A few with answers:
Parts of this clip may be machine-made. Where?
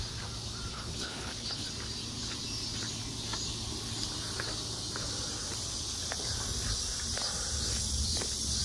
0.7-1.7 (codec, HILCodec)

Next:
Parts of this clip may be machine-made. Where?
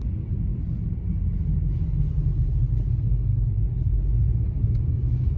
3.3-4.0 (codec, HILCodec)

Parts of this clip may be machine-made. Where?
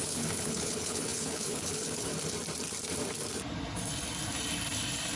0.0-2.1 (codec, HILCodec)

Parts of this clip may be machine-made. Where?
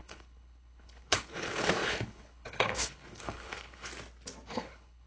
0.0-3.9 (codec, HILCodec); 4.5-5.1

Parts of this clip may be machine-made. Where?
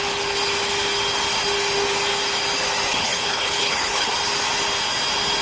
2.9-4.1 (codec, HILCodec)